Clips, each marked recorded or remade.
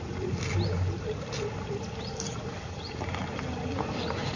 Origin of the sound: recorded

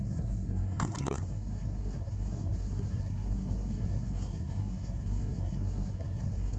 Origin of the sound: remade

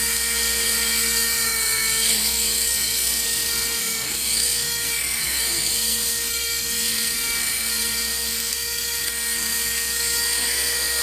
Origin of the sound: remade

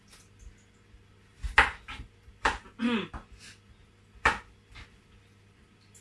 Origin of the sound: recorded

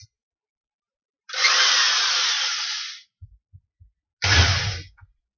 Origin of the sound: recorded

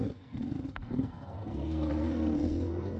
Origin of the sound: remade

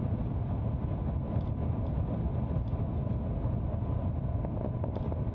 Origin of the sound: recorded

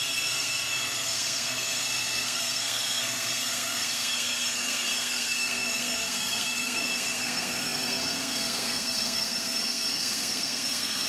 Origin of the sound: remade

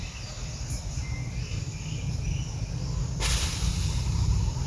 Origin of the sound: recorded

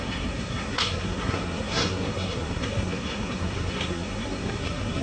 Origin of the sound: remade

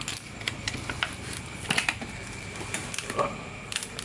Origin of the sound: recorded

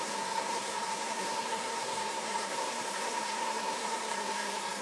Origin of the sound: remade